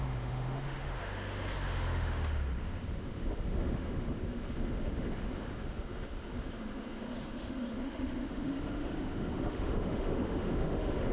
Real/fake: fake